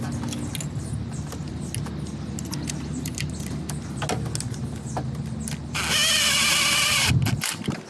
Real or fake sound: real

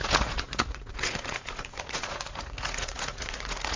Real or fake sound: fake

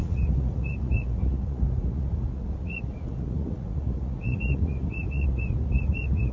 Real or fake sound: fake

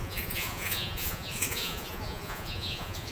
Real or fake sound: fake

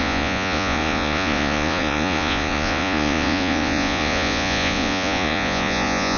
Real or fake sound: fake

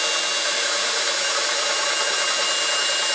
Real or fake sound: real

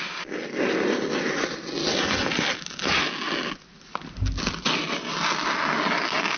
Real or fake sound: real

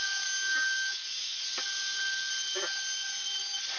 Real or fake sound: real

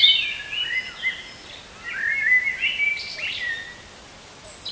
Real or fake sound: real